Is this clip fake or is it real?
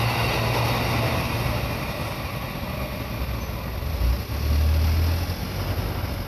real